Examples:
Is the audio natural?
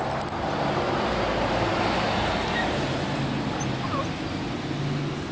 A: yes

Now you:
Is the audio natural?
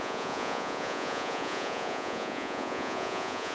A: no